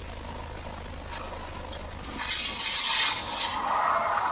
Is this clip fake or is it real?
real